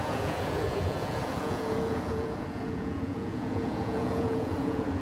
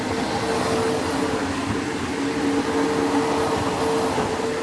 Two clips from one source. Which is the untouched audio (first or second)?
second